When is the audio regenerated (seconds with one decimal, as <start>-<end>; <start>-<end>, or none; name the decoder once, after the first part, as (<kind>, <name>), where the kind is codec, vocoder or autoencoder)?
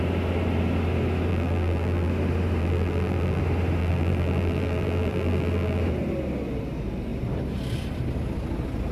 1.3-2.1 (vocoder, BigVGAN v2); 2.6-3.4; 3.8-5.8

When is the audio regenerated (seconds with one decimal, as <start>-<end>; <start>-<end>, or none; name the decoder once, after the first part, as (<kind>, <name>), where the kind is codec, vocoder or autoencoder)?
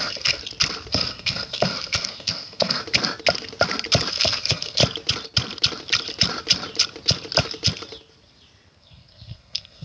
0.0-0.4 (codec, SNAC); 0.9-2.8; 4.1-4.8; 8.8-9.8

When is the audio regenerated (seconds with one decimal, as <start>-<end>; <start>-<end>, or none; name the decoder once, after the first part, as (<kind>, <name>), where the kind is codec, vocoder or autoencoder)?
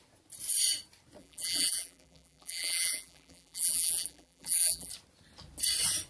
1.2-4.9 (vocoder, BigVGAN v2)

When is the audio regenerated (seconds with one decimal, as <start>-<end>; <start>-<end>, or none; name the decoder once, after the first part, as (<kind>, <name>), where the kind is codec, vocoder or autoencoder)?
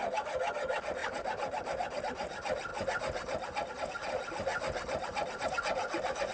1.0-2.0 (vocoder, BigVGAN v2)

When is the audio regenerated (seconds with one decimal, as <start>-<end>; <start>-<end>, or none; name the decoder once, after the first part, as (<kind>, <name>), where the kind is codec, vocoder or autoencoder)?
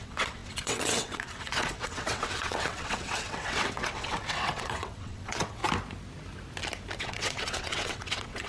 0.0-5.6 (vocoder, WaveNeXt); 7.0-8.5